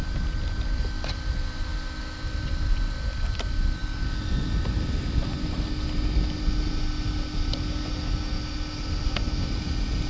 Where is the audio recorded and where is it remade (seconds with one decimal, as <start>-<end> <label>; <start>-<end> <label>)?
0.0-10.1 recorded